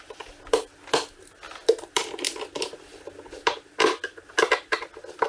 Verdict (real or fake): real